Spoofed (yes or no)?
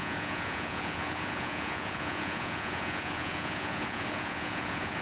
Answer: yes